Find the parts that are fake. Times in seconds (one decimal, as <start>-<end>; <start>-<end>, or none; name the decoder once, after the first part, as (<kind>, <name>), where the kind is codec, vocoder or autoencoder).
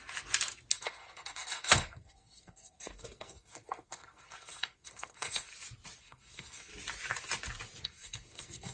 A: 0.7-5.5 (codec, SNAC); 6.0-6.7; 7.8-8.7